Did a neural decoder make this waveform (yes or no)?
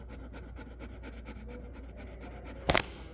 no